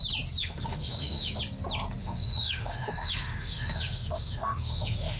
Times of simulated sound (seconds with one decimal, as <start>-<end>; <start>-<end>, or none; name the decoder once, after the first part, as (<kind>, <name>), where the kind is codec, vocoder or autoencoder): 0.4-1.4 (autoencoder, DAC-VAE); 2.0-5.2